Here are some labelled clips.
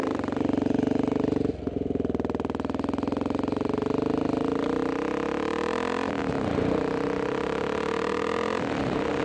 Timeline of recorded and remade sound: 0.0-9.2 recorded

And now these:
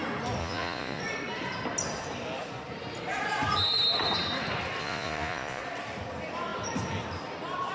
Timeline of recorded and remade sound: 0.0-0.4 recorded; 0.4-1.0 remade; 1.0-4.8 recorded; 4.8-5.6 remade; 5.6-7.7 recorded

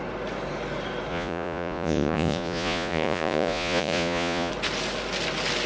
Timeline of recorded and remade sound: 0.0-1.1 recorded; 1.1-4.5 remade; 4.5-5.7 recorded

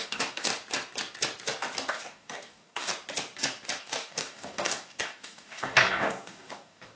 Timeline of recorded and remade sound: 0.0-0.5 remade; 0.5-1.9 recorded; 1.9-2.9 remade; 2.9-3.8 recorded; 3.8-7.0 remade

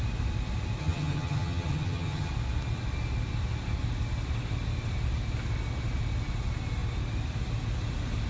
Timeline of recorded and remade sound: 0.0-0.8 recorded; 0.8-2.3 remade; 2.3-8.3 recorded

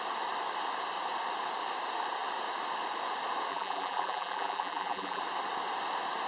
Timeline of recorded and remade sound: 0.0-3.5 recorded; 3.5-5.2 remade; 5.2-6.3 recorded